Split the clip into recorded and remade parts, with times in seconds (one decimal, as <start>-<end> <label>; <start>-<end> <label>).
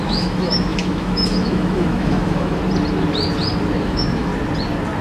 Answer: 0.0-2.6 remade; 2.6-3.8 recorded; 3.8-4.3 remade; 4.3-5.0 recorded